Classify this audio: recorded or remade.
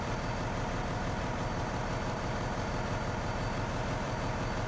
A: remade